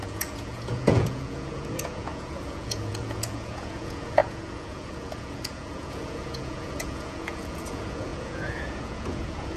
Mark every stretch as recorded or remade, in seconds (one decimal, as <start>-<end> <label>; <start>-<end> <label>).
0.0-9.6 remade